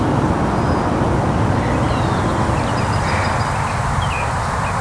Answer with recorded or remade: recorded